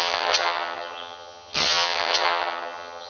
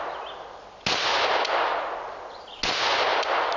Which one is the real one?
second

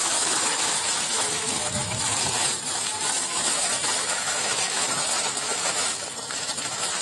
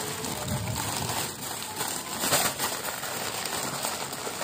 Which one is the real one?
second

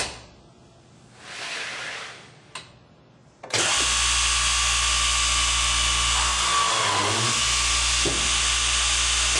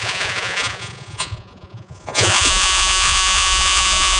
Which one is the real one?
first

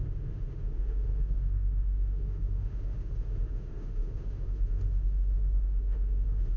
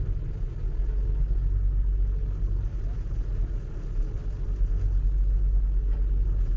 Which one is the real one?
second